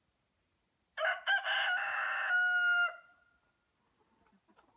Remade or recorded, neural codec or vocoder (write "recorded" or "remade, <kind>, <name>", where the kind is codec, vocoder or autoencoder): recorded